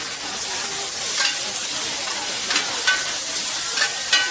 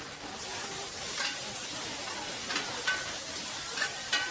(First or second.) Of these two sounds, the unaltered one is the first